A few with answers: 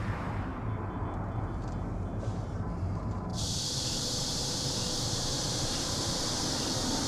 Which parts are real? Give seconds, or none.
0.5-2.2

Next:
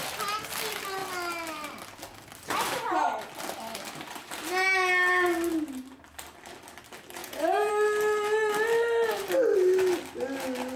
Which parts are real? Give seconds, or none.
0.0-7.2; 7.7-10.8